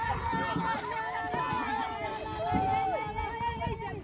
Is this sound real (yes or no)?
yes